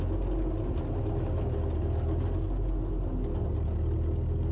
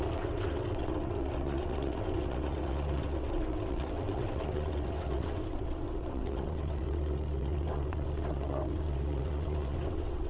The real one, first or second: first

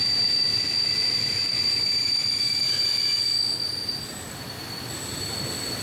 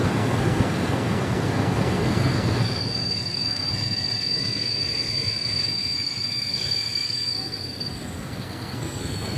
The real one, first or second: first